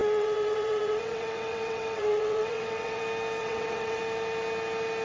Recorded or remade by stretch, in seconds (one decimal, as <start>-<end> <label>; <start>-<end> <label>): 0.0-3.0 remade; 3.0-3.4 recorded; 3.4-4.0 remade; 4.0-5.0 recorded